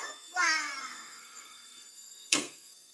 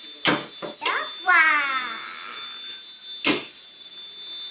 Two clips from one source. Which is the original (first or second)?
second